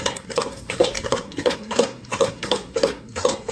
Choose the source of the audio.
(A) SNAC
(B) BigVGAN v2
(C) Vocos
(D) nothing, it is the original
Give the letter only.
A